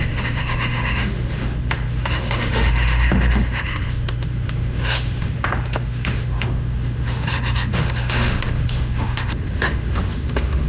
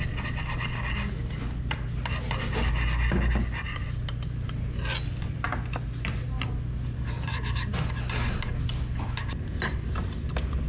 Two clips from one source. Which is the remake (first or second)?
first